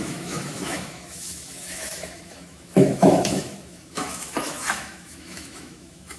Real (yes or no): no